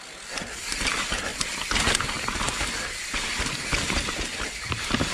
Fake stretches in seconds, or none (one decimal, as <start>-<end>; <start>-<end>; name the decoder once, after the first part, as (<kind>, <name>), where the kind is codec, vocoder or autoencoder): none